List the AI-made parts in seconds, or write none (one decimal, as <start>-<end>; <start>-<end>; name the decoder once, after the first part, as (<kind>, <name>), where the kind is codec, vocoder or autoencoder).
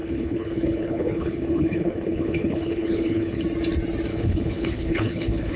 0.0-3.4 (codec, HILCodec); 4.1-5.6